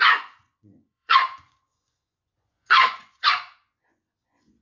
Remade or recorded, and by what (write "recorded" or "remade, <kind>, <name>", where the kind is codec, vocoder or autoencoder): remade, vocoder, Vocos